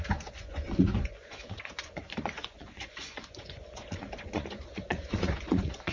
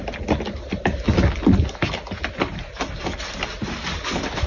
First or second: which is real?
second